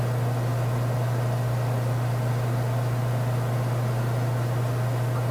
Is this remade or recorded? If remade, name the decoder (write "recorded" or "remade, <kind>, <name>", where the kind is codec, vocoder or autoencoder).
recorded